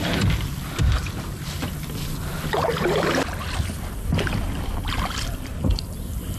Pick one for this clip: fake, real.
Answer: fake